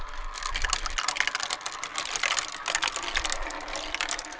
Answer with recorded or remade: recorded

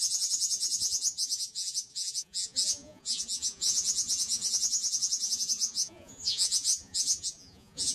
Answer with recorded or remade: remade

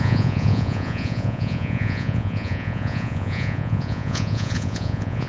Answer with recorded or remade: remade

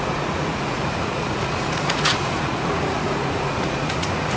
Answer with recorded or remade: remade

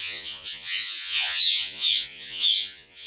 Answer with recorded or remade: remade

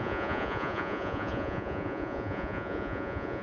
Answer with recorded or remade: remade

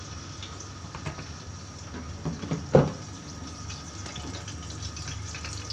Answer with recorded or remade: recorded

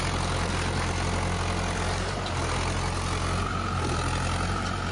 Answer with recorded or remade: recorded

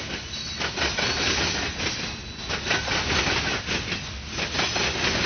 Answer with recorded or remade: recorded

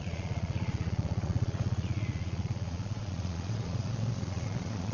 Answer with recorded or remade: remade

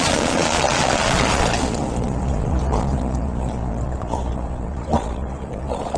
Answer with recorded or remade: remade